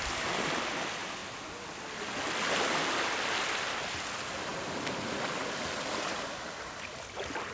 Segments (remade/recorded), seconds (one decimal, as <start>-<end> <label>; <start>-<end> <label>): 0.0-7.5 recorded